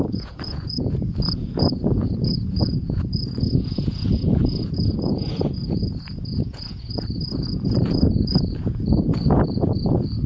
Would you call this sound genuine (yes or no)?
no